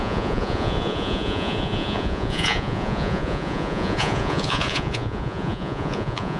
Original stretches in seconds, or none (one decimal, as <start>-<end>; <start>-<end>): none